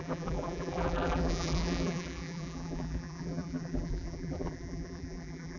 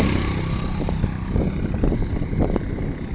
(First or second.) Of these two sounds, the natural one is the second